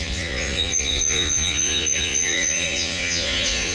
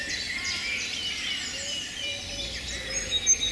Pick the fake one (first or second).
first